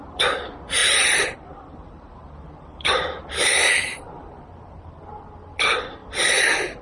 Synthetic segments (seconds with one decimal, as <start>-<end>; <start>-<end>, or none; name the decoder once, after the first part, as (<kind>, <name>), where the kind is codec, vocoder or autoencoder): 0.8-4.9 (vocoder, BigVGAN v2)